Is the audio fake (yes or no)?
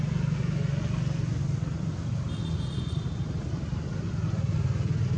no